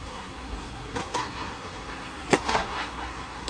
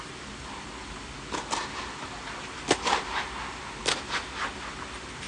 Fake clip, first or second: first